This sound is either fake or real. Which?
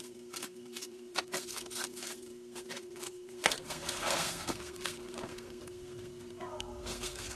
fake